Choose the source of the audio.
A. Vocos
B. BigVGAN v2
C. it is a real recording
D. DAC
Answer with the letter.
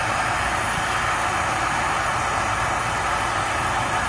C